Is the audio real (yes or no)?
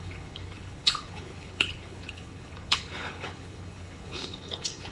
no